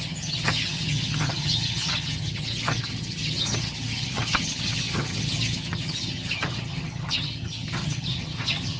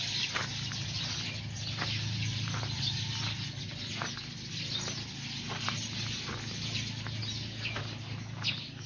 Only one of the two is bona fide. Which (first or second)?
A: second